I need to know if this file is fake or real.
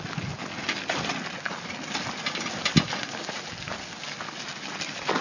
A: real